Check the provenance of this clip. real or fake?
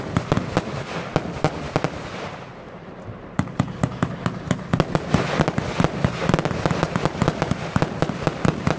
real